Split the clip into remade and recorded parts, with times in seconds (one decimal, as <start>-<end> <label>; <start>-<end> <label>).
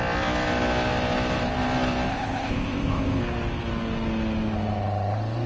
0.0-2.1 recorded; 2.1-3.2 remade; 3.2-5.5 recorded